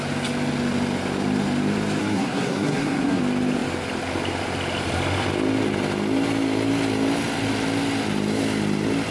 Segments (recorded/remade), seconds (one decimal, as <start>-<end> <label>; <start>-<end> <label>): 0.0-2.0 recorded; 2.0-3.2 remade; 3.2-9.1 recorded